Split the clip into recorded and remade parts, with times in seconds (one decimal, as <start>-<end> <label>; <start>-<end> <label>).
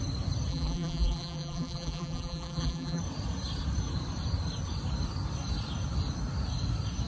0.0-0.5 recorded; 0.5-3.0 remade; 3.0-7.1 recorded